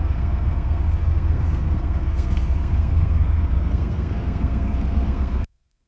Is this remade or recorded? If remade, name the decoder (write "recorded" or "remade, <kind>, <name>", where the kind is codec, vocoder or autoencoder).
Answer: remade, codec, SNAC